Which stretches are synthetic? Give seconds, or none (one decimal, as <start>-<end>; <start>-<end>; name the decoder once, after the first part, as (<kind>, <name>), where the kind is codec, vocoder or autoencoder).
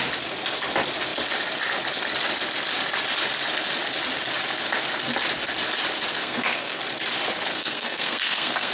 6.2-6.8 (codec, SNAC); 7.5-8.7